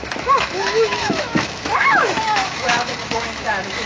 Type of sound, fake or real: fake